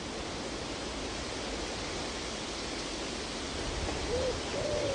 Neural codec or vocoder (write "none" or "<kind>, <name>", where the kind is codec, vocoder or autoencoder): none